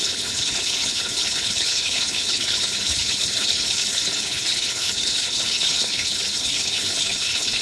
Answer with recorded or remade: remade